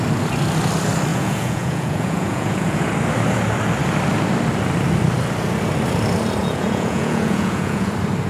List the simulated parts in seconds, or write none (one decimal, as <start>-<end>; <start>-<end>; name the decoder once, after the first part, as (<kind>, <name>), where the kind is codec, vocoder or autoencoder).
1.1-2.9 (vocoder, Vocos); 6.4-7.9